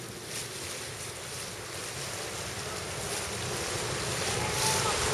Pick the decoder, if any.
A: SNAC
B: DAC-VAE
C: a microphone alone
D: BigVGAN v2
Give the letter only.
C